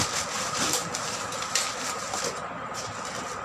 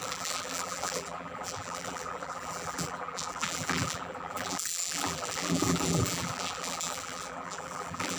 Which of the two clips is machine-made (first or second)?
second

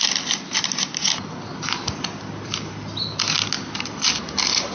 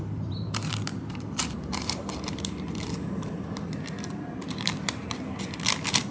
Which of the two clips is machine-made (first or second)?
second